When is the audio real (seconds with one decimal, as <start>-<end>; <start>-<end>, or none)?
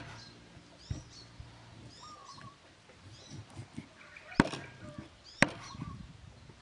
0.0-6.6